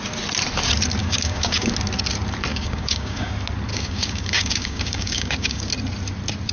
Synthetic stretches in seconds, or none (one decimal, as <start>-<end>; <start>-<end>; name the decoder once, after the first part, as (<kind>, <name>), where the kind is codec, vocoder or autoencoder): 1.0-1.7 (codec, DAC); 2.5-3.3; 3.7-5.7